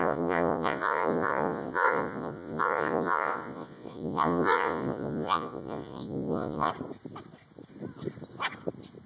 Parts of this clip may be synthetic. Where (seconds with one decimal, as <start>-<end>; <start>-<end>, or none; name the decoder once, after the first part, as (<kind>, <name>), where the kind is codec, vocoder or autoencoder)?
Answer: 0.0-6.7 (vocoder, Vocos)